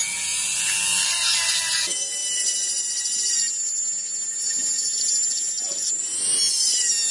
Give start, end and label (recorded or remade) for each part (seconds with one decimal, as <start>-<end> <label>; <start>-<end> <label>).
0.0-7.1 recorded